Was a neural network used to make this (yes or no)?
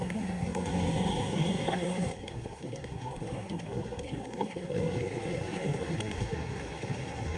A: yes